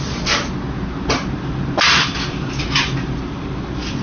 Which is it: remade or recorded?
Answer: recorded